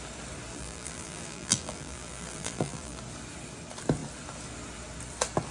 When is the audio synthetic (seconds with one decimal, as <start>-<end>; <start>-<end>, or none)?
0.5-3.0